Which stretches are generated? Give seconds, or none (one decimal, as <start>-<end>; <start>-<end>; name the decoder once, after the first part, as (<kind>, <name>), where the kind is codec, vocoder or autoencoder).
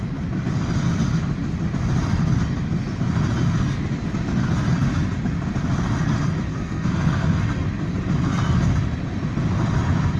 6.5-7.4 (codec, SNAC)